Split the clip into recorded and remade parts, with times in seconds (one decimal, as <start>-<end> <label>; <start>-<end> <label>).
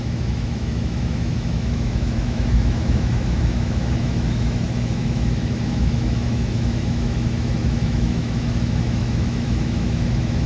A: 0.0-10.5 remade